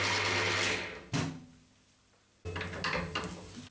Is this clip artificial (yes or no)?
no